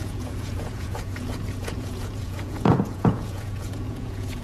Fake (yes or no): yes